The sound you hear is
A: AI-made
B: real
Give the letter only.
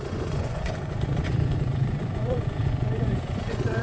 A